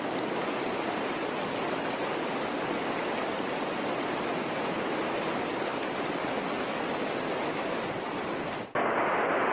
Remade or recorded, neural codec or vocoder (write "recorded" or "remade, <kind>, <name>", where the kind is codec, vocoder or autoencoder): recorded